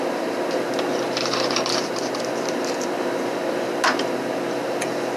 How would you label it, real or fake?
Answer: fake